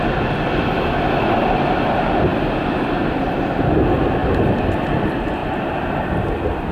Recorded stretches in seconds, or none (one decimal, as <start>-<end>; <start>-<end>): 0.0-6.7